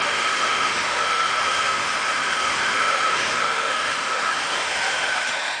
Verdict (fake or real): fake